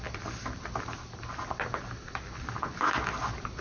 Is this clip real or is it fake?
real